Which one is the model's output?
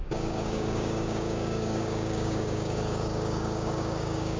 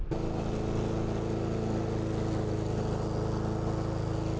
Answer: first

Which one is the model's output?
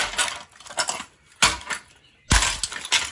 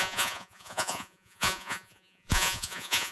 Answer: second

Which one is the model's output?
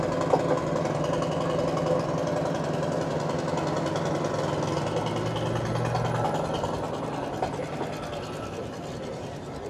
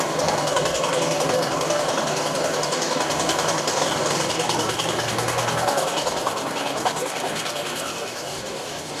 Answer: second